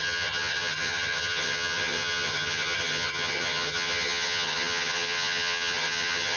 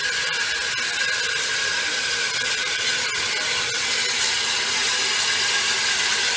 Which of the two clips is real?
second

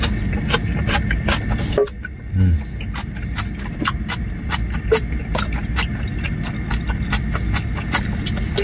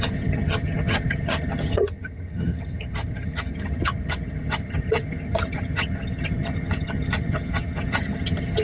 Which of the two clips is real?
first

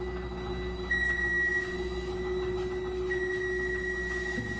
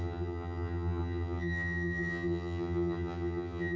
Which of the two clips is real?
first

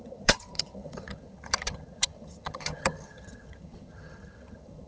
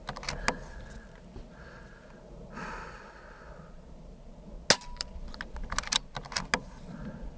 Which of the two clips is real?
second